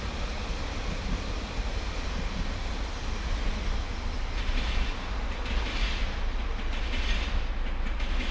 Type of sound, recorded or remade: recorded